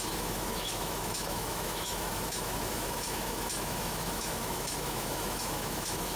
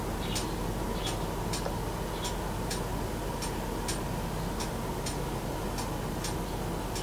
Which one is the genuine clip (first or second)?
second